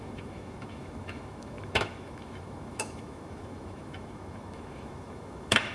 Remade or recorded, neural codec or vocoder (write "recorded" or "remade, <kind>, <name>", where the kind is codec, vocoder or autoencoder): remade, autoencoder, DAC-VAE